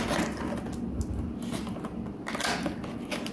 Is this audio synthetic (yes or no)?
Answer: no